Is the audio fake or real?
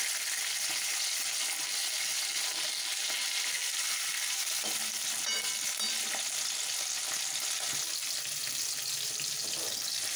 real